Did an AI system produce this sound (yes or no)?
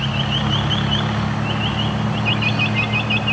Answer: no